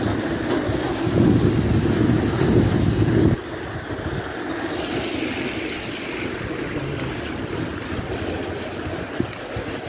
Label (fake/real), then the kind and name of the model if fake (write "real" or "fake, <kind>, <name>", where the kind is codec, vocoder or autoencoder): real